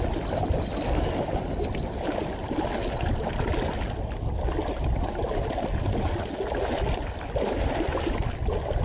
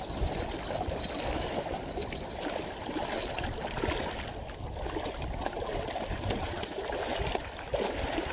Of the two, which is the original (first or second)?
first